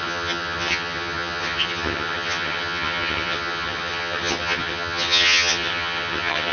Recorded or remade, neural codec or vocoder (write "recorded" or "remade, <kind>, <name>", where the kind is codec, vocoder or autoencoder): remade, vocoder, HiFi-GAN